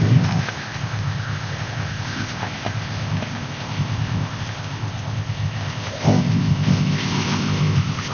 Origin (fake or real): fake